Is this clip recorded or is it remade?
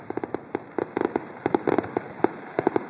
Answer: remade